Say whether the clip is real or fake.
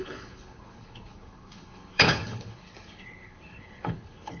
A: fake